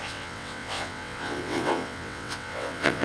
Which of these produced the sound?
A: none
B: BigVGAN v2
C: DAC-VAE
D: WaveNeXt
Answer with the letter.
D